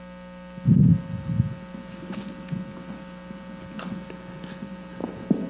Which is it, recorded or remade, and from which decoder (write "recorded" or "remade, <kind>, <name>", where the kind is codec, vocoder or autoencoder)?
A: recorded